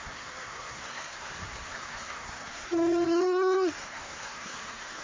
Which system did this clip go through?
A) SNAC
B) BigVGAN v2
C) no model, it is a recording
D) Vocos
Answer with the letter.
A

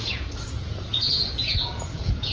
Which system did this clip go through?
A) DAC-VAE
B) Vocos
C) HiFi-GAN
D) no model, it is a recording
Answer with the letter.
B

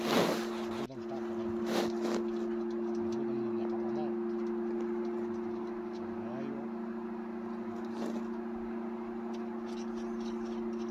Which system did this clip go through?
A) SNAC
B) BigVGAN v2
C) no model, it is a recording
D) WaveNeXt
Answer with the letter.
C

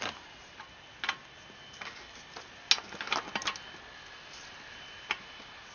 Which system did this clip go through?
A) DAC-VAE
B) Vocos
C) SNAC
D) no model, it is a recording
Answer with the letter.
D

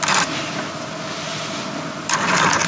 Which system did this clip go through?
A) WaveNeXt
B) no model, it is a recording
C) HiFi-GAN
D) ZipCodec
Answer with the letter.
B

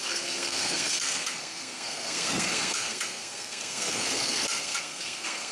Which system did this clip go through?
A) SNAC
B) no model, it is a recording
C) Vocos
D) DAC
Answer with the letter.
A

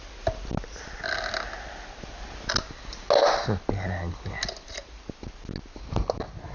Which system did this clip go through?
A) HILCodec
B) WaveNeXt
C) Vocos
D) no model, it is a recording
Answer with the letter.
D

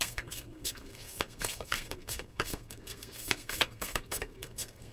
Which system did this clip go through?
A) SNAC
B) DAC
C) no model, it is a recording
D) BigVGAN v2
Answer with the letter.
A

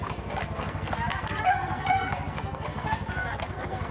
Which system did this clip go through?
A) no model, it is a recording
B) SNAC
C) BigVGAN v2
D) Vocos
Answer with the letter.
B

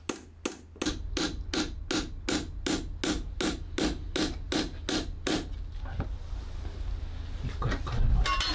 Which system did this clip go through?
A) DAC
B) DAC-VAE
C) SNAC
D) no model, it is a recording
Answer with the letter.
D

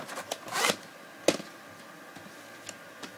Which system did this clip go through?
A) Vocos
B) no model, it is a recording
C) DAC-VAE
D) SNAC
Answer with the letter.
B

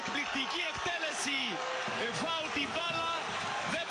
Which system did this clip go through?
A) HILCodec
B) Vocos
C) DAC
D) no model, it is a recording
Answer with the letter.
C